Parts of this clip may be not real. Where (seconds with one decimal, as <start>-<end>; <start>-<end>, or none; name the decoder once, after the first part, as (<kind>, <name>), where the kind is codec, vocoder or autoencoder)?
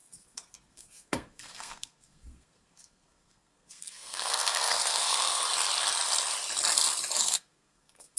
0.0-5.4 (codec, SNAC); 7.2-8.2